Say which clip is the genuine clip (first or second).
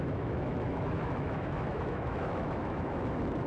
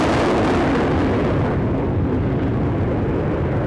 second